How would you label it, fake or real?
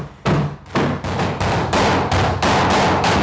real